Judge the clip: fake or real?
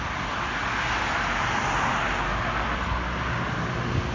real